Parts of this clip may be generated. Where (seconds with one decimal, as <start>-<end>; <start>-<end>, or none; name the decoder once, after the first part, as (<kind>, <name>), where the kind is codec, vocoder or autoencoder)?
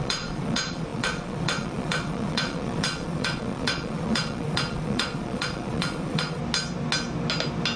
0.0-6.4 (vocoder, Vocos)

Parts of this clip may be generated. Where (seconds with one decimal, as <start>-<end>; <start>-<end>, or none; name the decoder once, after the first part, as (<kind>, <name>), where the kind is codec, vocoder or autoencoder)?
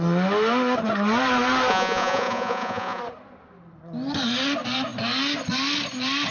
1.7-3.0 (vocoder, Vocos)